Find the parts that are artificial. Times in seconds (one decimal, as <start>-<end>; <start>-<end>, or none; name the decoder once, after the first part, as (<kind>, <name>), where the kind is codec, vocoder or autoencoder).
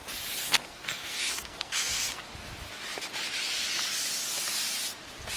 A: 0.4-2.2 (codec, SNAC)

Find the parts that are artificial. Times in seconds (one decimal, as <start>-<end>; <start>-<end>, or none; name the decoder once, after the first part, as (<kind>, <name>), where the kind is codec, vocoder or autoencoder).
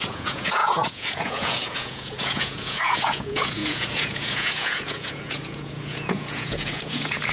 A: 0.0-7.3 (vocoder, Vocos)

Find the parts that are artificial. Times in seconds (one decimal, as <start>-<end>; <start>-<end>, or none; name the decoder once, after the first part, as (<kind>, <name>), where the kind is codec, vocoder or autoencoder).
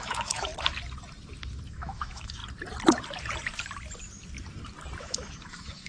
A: 0.0-0.5 (autoencoder, DAC-VAE); 1.7-2.4; 5.0-5.9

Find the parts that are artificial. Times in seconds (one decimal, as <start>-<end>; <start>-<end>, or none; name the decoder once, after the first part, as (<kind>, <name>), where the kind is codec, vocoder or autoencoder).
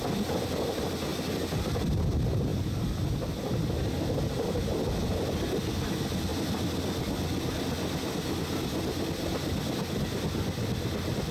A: none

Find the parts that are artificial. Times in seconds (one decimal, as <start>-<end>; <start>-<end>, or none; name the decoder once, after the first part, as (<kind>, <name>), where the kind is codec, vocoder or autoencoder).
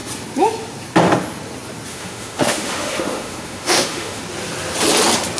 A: 1.9-4.2 (autoencoder, DAC-VAE)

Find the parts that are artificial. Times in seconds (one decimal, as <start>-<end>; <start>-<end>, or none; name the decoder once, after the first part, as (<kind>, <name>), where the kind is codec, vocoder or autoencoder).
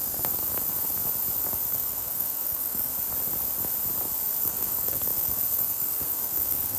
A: 0.0-0.4 (codec, SNAC); 1.7-2.9; 4.4-6.8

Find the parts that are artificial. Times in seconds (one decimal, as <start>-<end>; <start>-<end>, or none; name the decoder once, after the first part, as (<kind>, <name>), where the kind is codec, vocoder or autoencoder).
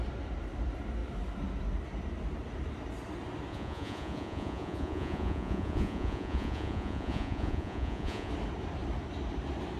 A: 3.5-8.3 (vocoder, Vocos)